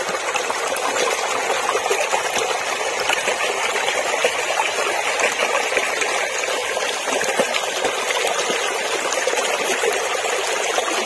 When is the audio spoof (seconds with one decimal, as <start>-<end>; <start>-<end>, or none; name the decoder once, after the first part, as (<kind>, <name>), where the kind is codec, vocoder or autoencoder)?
none